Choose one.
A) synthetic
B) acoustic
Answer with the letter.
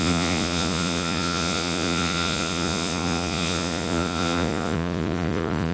A